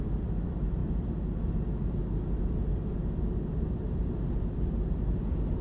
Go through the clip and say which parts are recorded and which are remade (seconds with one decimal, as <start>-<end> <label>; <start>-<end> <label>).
0.0-5.6 recorded